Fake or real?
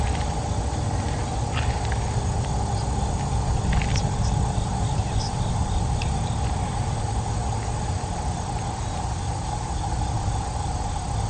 real